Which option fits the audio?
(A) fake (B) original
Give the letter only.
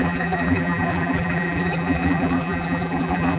A